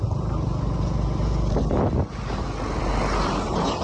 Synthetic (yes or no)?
no